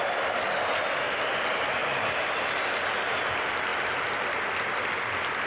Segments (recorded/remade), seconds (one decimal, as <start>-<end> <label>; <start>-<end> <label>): 0.0-1.8 recorded; 1.8-2.5 remade; 2.5-5.5 recorded